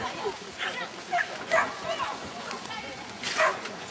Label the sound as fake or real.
fake